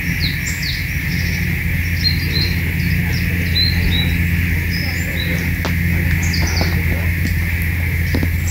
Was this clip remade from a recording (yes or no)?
no